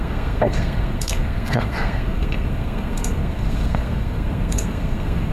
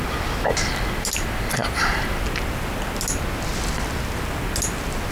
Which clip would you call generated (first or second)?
first